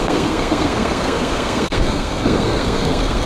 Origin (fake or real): fake